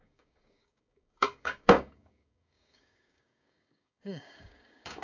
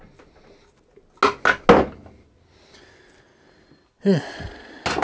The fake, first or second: first